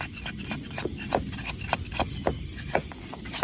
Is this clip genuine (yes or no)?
yes